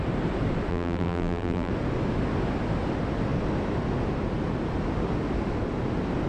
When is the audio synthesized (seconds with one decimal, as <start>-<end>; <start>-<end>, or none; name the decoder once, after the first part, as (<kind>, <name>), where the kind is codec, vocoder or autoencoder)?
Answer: 0.7-1.7 (vocoder, BigVGAN v2)